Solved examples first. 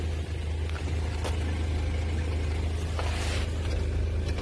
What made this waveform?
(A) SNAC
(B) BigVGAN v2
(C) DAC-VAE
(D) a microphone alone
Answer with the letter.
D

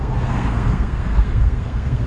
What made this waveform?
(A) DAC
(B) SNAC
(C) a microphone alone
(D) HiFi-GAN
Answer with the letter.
B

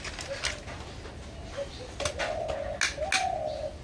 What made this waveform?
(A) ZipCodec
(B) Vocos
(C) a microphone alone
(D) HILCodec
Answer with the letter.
C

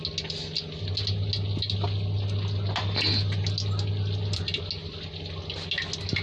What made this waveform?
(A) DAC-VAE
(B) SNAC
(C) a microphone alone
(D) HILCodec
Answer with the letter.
C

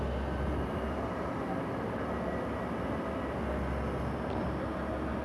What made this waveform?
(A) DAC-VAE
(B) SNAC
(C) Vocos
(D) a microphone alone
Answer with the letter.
D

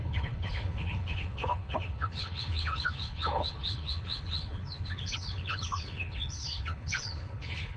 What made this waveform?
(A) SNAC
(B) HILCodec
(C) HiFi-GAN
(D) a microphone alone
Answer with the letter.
B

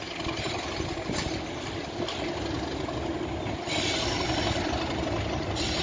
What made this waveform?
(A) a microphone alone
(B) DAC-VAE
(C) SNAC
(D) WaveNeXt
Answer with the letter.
A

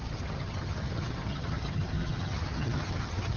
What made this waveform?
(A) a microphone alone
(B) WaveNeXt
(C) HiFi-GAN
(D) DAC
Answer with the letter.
C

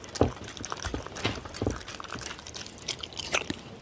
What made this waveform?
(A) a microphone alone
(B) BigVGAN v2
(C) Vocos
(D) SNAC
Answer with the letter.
A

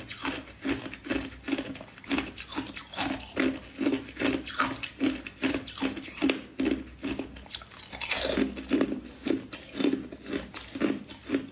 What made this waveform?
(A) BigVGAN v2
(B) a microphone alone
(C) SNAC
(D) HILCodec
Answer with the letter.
B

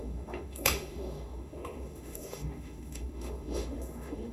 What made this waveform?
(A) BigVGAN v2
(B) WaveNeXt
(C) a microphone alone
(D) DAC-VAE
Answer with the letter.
D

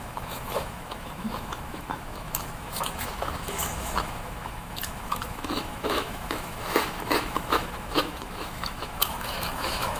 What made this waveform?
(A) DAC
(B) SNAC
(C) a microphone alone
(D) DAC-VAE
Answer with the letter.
D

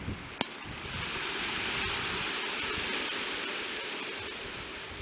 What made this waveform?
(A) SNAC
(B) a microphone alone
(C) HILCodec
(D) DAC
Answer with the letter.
B